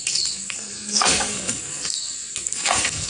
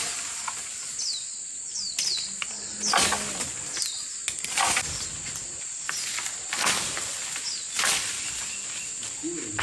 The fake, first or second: first